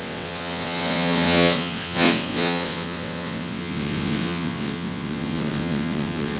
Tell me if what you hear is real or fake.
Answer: fake